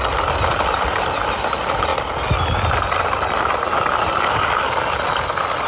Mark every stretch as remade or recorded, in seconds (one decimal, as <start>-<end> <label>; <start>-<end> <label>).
0.0-5.7 recorded